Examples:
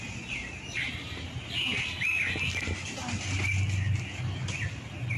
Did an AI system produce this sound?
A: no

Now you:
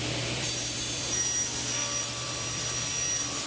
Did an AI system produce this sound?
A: yes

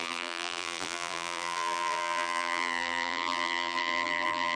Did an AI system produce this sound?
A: yes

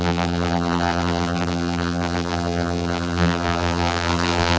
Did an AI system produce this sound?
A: yes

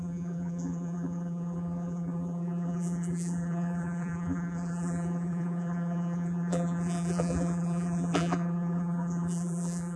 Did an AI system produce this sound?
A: yes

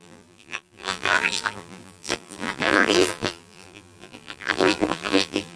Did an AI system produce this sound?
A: yes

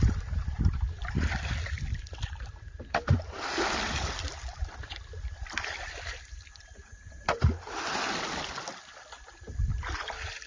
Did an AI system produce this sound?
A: yes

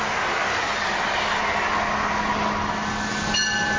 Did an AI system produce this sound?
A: no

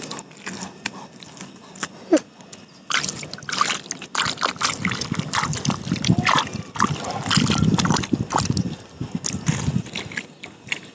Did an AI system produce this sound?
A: no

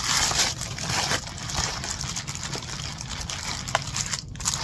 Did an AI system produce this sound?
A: yes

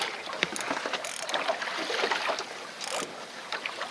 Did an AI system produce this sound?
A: no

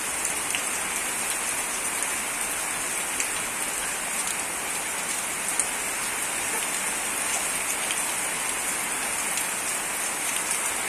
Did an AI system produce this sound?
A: no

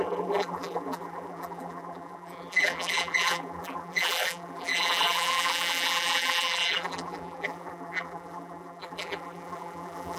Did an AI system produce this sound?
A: yes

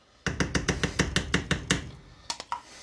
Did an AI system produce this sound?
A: no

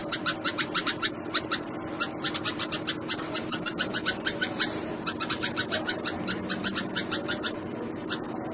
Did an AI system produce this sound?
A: yes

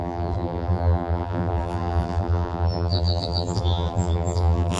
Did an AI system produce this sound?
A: yes